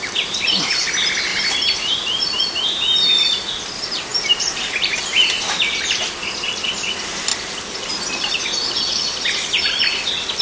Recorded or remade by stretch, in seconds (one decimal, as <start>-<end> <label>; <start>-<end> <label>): 0.0-1.3 recorded; 1.3-2.4 remade; 2.4-4.1 recorded; 4.1-5.0 remade; 5.0-10.4 recorded